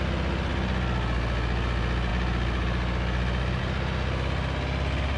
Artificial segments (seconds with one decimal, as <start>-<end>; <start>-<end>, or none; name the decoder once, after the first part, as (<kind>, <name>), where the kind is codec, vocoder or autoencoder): none